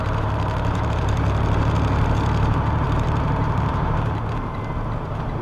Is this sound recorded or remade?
remade